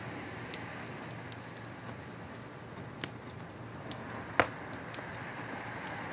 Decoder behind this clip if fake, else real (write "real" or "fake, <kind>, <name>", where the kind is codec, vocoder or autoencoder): real